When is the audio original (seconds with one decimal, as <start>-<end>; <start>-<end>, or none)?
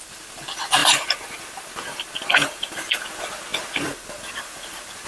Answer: 0.0-0.8; 3.1-5.1